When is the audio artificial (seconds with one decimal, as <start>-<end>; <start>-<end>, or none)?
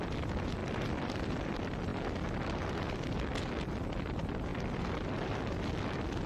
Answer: 0.6-1.4; 4.5-5.5